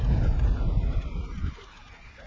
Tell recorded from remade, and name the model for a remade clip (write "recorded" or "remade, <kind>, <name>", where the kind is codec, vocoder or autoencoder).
recorded